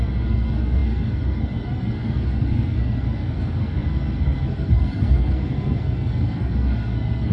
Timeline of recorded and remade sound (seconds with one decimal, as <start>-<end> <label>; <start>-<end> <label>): 0.0-7.3 remade